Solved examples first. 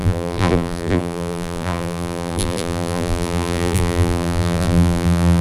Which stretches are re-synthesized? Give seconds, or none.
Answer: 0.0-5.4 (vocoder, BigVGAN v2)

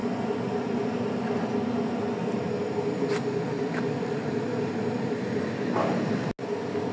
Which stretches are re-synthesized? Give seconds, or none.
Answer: none

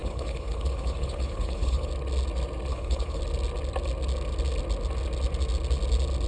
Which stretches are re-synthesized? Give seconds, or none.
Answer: 0.0-1.9 (codec, HILCodec); 2.7-3.2